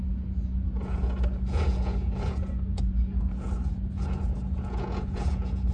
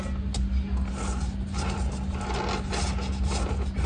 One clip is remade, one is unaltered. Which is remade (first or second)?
first